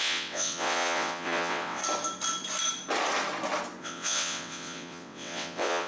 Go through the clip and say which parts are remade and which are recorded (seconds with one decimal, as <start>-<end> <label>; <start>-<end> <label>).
0.0-1.8 remade; 1.8-3.8 recorded; 3.8-5.9 remade